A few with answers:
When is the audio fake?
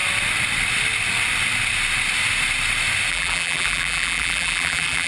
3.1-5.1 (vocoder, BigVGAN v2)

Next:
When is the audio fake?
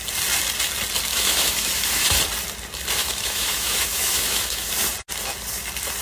1.1-2.2 (autoencoder, DAC-VAE); 3.0-4.7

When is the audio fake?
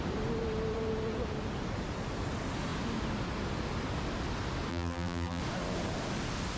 4.7-5.4 (vocoder, BigVGAN v2)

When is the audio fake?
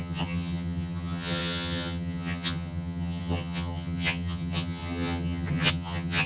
0.0-6.3 (vocoder, HiFi-GAN)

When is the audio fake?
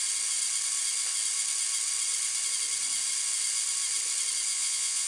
4.5-5.1 (vocoder, Vocos)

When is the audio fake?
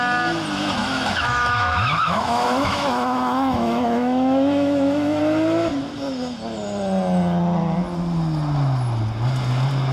0.8-5.2 (autoencoder, DAC-VAE)